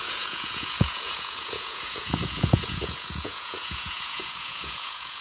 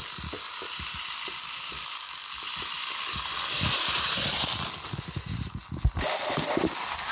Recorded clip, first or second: second